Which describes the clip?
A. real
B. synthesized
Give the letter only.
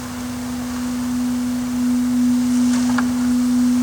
A